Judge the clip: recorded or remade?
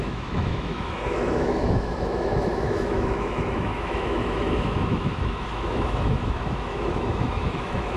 remade